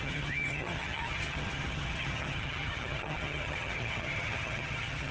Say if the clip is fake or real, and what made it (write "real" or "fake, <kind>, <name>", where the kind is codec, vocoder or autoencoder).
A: fake, vocoder, HiFi-GAN